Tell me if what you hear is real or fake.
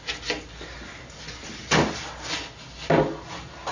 real